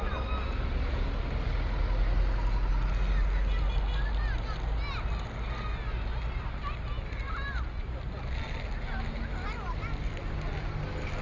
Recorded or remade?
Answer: recorded